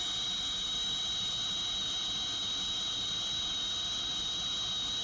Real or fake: real